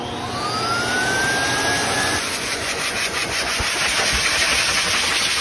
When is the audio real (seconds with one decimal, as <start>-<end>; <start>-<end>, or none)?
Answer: 0.0-1.8; 3.6-5.4